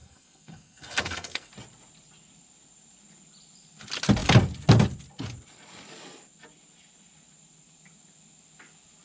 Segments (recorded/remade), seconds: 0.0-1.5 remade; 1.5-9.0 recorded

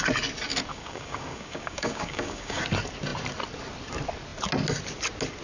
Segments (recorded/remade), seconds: 0.0-0.7 recorded; 0.7-2.6 remade; 2.6-5.4 recorded

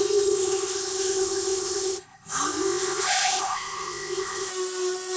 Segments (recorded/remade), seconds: 0.0-4.5 remade; 4.5-5.2 recorded

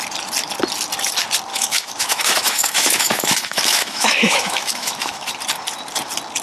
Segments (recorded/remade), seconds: 0.0-1.5 recorded; 1.5-5.3 remade; 5.3-6.4 recorded

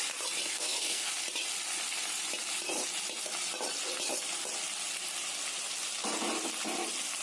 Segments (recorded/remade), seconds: 0.0-0.5 recorded; 0.5-1.1 remade; 1.1-7.2 recorded

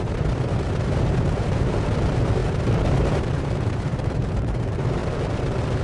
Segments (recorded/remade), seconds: 0.0-5.0 remade; 5.0-5.8 recorded

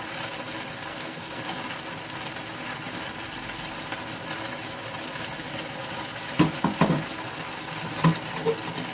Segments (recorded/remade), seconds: 0.0-0.9 recorded; 0.9-1.4 remade; 1.4-8.9 recorded